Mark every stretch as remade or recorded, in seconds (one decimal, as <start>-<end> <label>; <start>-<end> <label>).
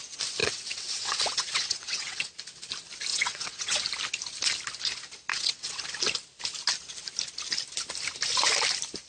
0.0-0.4 recorded; 0.4-2.3 remade; 2.3-3.1 recorded; 3.1-3.8 remade; 3.8-5.3 recorded; 5.3-5.8 remade; 5.8-9.1 recorded